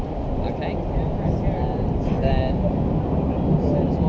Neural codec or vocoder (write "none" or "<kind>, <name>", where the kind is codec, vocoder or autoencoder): none